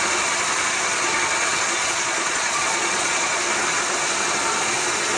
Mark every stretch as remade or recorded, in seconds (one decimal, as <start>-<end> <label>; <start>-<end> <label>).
0.0-1.5 recorded; 1.5-3.4 remade; 3.4-5.2 recorded